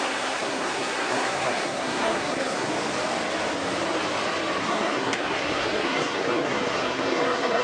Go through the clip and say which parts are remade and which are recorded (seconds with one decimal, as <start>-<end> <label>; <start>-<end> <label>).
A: 0.0-2.7 remade; 2.7-4.6 recorded; 4.6-7.6 remade